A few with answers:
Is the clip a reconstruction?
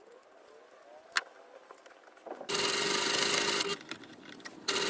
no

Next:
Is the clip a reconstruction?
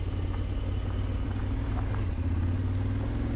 no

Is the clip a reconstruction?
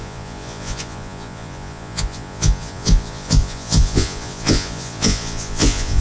yes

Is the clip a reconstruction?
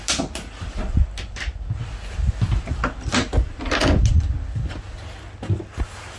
no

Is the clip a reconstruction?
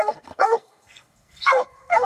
yes